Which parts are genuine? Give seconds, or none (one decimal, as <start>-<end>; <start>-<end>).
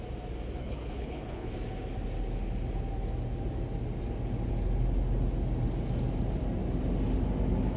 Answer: 0.0-0.6; 1.5-7.8